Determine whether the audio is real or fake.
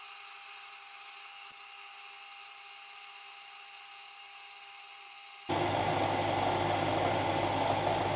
real